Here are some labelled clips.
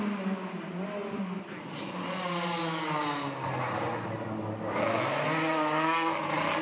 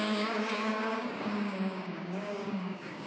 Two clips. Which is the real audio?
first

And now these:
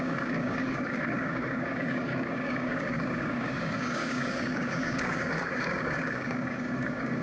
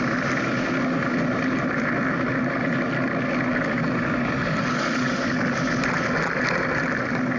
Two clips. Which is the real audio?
second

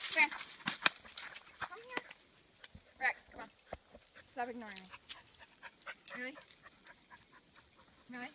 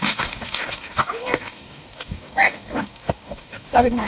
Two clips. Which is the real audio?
first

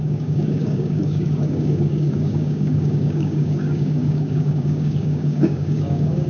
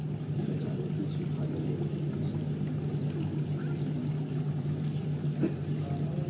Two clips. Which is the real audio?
second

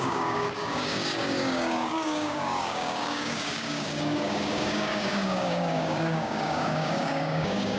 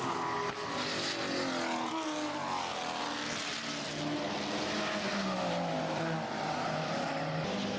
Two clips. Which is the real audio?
second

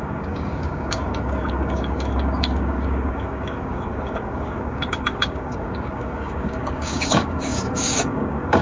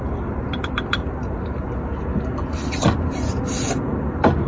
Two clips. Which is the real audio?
second